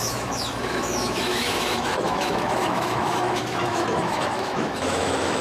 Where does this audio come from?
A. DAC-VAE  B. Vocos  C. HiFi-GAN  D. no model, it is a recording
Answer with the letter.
A